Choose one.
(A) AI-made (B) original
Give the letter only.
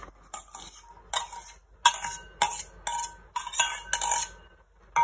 B